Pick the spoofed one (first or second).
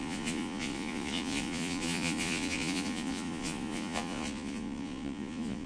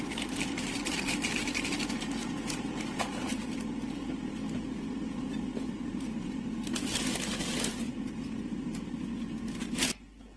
first